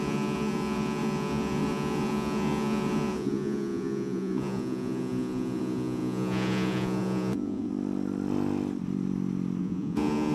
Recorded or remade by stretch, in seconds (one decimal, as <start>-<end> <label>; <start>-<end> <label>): 0.0-7.7 remade; 7.7-9.6 recorded; 9.6-10.3 remade